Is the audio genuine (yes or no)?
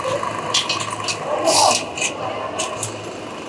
yes